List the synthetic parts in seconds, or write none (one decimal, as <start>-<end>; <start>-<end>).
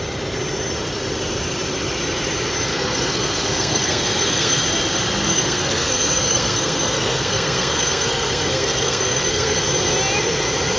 2.7-4.6; 5.3-9.6